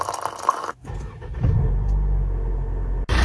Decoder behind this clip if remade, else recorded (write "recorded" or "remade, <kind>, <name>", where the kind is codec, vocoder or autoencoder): recorded